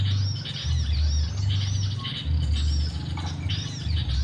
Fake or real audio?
real